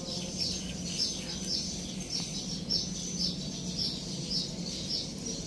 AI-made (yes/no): no